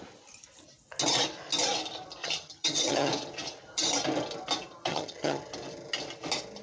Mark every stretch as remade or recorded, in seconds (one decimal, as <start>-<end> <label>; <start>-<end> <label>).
0.0-2.2 recorded; 2.2-3.1 remade; 3.1-4.9 recorded; 4.9-5.4 remade; 5.4-6.6 recorded